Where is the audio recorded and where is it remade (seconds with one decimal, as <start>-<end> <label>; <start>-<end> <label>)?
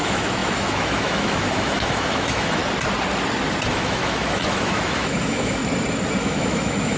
0.0-2.6 remade; 2.6-3.7 recorded; 3.7-5.6 remade; 5.6-6.2 recorded; 6.2-7.0 remade